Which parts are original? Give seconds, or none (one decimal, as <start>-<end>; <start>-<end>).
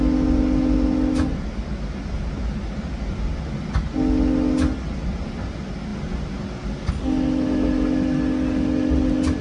0.0-9.4